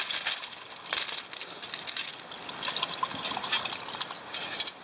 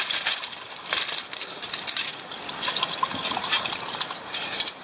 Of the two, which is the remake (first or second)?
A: second